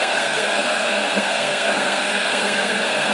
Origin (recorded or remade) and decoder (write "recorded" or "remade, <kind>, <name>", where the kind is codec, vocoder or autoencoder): remade, codec, SNAC